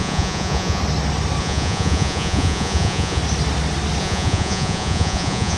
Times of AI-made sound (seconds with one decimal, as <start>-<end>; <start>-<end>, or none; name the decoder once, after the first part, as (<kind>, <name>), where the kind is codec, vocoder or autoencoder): 0.0-0.8 (vocoder, Vocos); 1.4-3.2; 4.0-5.6